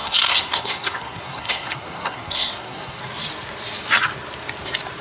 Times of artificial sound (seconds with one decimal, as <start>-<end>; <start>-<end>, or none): 0.0-3.0